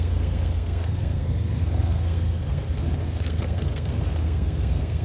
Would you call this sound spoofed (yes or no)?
yes